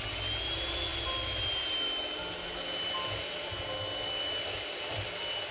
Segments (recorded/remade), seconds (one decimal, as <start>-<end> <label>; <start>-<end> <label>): 0.0-5.5 recorded

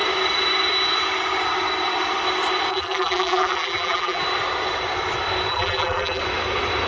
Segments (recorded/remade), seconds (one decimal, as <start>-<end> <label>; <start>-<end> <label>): 0.0-2.7 recorded; 2.7-4.2 remade; 4.2-5.5 recorded; 5.5-6.2 remade; 6.2-6.9 recorded

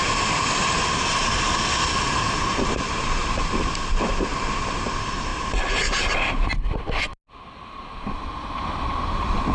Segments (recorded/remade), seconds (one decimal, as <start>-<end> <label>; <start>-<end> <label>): 0.0-5.3 remade; 5.3-8.8 recorded; 8.8-9.5 remade

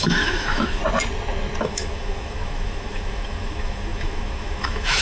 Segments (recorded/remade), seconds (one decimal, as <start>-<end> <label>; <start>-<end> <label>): 0.0-0.8 remade; 0.8-1.6 recorded; 1.6-5.0 remade

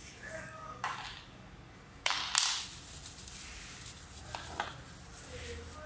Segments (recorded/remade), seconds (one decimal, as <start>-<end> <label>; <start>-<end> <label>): 0.0-2.2 remade; 2.2-5.9 recorded

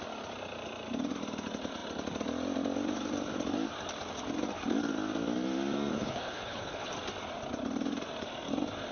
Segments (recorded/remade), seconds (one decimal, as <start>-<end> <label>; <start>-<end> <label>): 0.0-5.9 recorded; 5.9-6.9 remade; 6.9-8.9 recorded